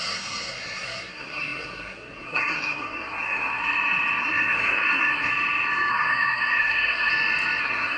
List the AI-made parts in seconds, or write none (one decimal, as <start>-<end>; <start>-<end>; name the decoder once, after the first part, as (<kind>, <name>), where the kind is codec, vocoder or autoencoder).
0.0-3.6 (codec, SNAC); 4.2-5.3; 5.9-7.1; 7.6-8.0